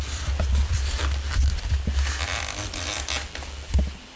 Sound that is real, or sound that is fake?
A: real